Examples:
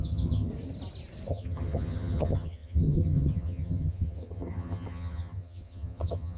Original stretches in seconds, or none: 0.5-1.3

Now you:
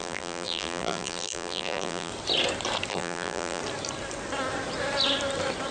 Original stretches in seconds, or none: 2.1-2.9; 3.6-5.7

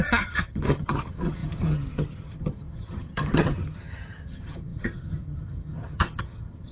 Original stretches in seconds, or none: none

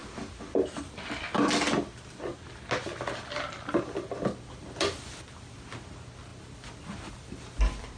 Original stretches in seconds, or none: 0.0-8.0

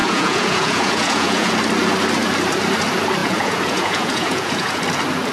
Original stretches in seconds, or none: 1.5-3.2; 4.8-5.3

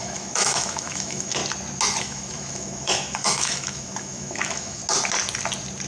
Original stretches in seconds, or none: 1.4-2.0; 4.8-5.9

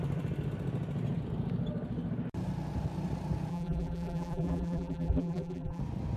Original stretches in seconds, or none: 0.0-3.5; 5.8-6.2